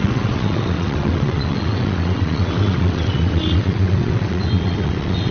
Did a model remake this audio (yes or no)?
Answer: yes